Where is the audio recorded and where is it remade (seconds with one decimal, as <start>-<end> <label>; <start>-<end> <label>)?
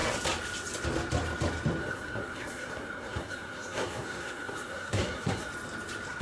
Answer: 0.0-1.8 recorded; 1.8-5.5 remade; 5.5-6.2 recorded